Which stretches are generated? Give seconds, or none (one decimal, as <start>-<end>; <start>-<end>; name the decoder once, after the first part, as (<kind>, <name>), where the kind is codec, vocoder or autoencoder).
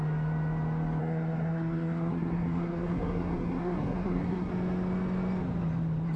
1.0-4.5 (codec, SNAC)